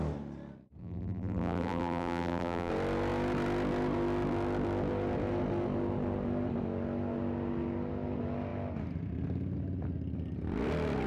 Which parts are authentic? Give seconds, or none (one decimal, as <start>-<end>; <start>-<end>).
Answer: 0.0-0.8; 2.7-11.1